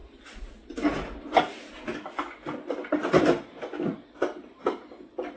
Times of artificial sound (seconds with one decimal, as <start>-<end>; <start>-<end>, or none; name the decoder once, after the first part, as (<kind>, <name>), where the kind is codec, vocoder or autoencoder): 3.2-5.4 (vocoder, BigVGAN v2)